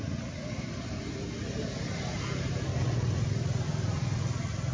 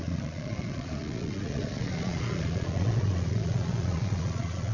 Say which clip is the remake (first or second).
second